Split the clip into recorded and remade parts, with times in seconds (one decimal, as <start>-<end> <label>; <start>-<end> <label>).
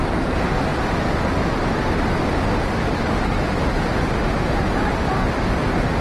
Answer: 0.0-6.0 recorded